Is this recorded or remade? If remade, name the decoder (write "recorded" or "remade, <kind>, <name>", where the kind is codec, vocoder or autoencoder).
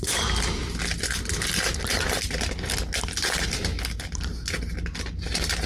recorded